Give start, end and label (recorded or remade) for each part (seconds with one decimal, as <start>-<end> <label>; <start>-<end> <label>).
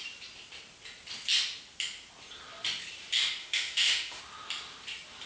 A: 0.0-3.4 recorded; 3.4-4.2 remade; 4.2-5.3 recorded